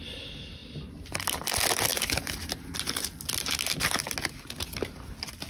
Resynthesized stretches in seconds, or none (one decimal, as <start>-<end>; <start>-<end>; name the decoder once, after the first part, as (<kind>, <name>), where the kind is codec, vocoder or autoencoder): none